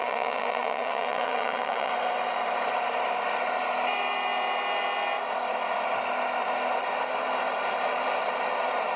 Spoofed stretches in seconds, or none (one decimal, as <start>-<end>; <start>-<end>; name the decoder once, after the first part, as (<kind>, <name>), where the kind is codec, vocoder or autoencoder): 0.0-1.9 (vocoder, WaveNeXt)